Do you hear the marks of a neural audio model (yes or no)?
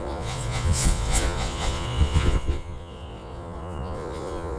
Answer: yes